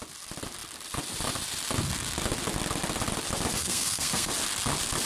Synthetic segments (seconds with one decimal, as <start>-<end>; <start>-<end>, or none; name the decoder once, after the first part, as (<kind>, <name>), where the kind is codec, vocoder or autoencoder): 3.6-4.3 (codec, SNAC)